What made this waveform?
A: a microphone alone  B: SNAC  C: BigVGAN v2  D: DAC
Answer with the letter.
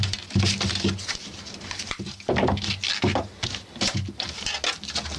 A